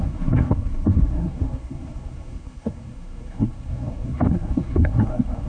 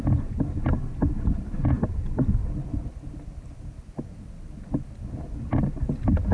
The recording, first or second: second